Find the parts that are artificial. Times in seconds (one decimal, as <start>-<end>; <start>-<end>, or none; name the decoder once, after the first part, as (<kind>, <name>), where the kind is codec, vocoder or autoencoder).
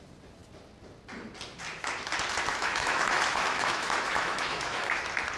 2.5-5.0 (autoencoder, DAC-VAE)